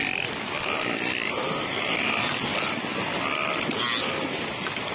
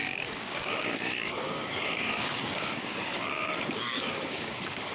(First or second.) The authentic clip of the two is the first